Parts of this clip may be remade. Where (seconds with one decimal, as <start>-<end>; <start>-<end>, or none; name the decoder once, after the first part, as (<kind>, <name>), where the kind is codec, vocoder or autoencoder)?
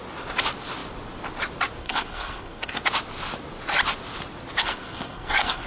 1.8-2.8 (codec, SNAC); 4.6-5.7